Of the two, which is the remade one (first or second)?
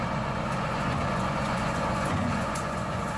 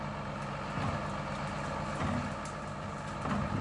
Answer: first